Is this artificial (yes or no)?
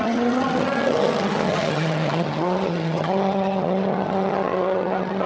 yes